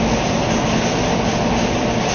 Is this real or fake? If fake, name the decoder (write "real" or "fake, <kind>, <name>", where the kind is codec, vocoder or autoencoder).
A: real